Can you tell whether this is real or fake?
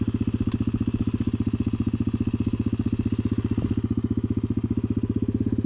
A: real